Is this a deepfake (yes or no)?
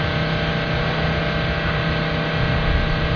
no